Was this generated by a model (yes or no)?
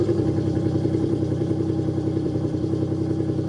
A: yes